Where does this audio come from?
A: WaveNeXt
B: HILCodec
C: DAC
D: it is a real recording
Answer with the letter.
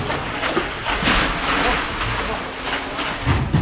D